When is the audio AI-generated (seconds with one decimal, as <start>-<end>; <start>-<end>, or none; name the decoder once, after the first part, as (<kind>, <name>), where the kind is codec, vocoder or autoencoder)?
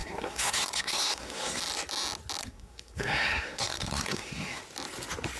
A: 0.0-1.6 (codec, SNAC); 2.4-4.6